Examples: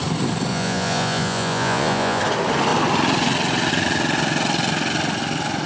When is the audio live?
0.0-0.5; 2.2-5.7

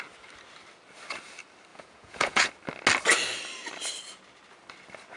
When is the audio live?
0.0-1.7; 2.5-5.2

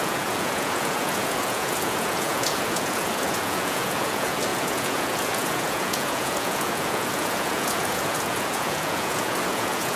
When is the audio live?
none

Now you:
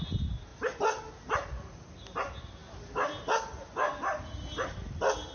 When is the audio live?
0.0-5.3

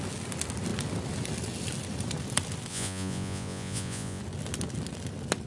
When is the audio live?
0.0-2.7; 4.2-5.5

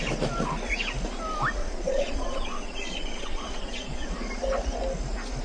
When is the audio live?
0.0-1.6; 4.1-5.4

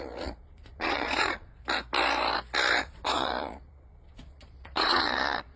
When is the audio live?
1.6-2.8